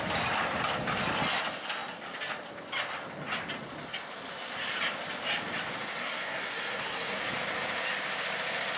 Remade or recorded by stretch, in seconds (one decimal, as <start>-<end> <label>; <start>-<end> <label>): 0.0-6.0 recorded; 6.0-7.2 remade; 7.2-8.8 recorded